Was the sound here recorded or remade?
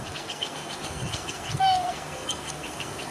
remade